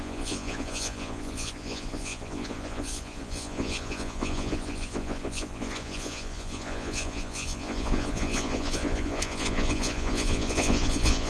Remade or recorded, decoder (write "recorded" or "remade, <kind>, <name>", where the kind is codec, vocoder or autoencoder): remade, vocoder, Vocos